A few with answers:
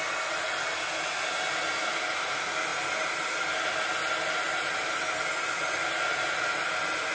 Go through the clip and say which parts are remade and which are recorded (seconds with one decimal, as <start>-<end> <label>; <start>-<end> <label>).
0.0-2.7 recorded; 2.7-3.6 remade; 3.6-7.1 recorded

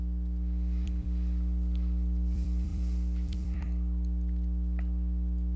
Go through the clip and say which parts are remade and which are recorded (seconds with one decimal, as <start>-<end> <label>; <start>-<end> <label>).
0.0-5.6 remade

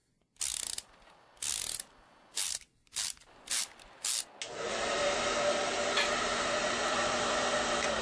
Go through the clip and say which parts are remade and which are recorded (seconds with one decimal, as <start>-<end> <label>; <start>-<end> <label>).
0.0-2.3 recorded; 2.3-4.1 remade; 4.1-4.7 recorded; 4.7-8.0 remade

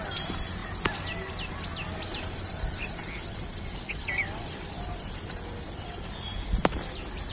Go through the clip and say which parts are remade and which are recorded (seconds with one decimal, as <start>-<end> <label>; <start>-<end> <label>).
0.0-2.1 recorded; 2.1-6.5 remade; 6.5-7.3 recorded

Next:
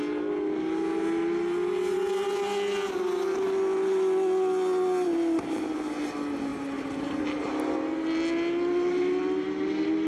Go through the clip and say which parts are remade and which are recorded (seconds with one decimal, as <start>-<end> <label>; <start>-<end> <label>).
0.0-6.5 recorded; 6.5-7.2 remade; 7.2-10.1 recorded

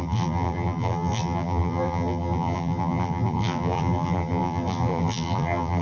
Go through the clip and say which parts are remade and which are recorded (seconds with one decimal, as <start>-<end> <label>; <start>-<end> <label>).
0.0-5.8 remade

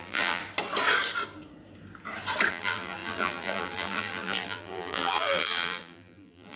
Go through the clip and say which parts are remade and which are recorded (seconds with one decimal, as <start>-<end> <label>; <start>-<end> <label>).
0.0-0.4 remade; 0.4-2.5 recorded; 2.5-6.6 remade